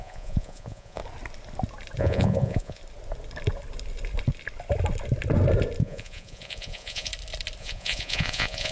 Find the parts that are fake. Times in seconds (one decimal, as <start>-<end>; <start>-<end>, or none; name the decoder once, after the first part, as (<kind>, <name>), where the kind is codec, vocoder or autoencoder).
0.0-1.0 (vocoder, Vocos); 2.0-2.8; 5.8-7.1; 7.6-8.7